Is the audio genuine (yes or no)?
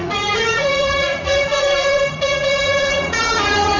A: no